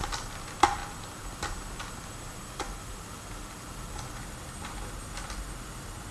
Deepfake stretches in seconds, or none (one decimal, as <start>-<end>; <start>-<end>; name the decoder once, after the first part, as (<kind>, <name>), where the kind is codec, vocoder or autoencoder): none